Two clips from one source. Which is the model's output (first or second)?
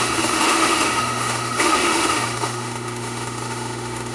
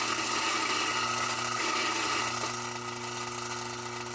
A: first